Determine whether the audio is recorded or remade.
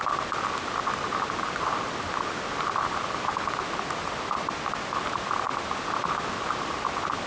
recorded